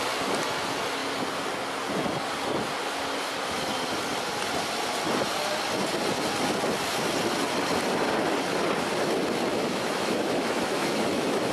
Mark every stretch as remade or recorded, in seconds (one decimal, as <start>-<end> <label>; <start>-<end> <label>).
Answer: 0.0-9.5 recorded; 9.5-11.5 remade